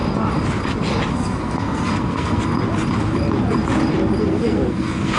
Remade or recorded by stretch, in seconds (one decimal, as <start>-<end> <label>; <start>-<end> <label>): 0.0-1.1 recorded; 1.1-2.5 remade; 2.5-4.2 recorded; 4.2-5.2 remade